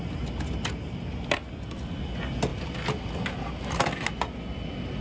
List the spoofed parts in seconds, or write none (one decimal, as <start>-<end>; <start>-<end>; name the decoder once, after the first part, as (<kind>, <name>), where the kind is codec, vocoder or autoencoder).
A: none